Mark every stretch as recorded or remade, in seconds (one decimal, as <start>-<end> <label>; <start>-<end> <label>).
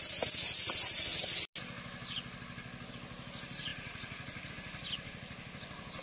0.0-6.0 recorded